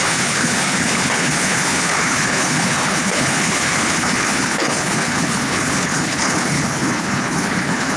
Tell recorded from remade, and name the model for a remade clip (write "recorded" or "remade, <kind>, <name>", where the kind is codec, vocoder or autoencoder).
remade, codec, HILCodec